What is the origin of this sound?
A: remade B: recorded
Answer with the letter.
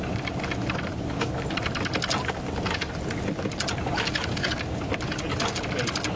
B